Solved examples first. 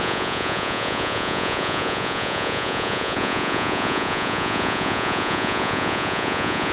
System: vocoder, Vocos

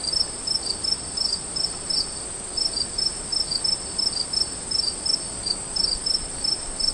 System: none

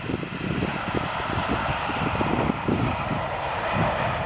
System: none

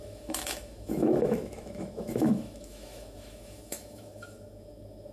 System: autoencoder, DAC-VAE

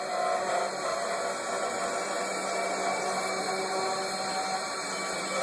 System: none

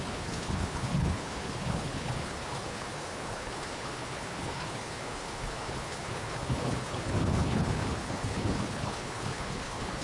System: codec, HILCodec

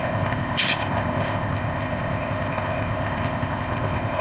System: codec, ZipCodec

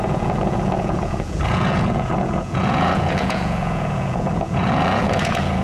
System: vocoder, Vocos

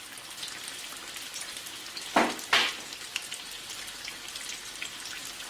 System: none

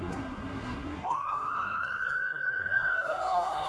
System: codec, SNAC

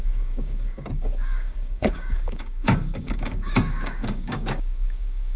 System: codec, DAC